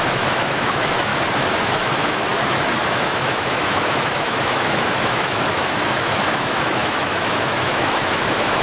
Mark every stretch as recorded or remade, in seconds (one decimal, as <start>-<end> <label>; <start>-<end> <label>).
0.0-1.1 remade; 1.1-1.6 recorded; 1.6-8.6 remade